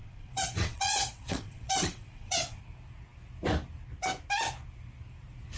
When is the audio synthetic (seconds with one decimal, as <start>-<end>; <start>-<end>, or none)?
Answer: 0.0-2.6